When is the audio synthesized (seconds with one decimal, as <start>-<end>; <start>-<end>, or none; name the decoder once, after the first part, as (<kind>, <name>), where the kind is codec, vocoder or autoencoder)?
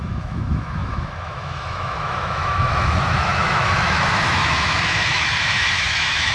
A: 0.0-6.3 (autoencoder, DAC-VAE)